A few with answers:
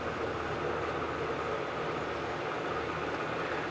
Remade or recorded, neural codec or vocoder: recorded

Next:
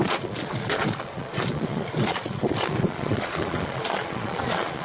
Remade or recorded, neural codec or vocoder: remade, vocoder, Vocos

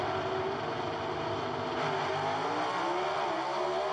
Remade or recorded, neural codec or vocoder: recorded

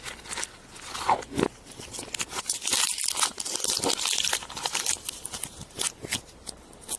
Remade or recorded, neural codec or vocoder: recorded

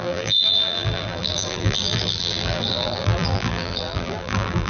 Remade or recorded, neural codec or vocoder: remade, vocoder, BigVGAN v2